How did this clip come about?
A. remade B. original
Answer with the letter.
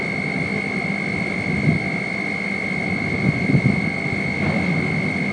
B